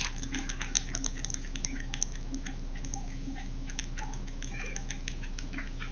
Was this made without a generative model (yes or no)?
no